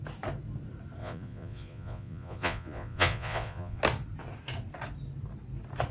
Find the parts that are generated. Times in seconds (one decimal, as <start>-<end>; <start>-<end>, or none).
1.0-3.8